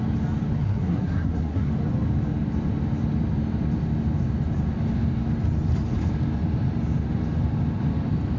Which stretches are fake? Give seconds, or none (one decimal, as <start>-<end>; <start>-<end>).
0.6-1.7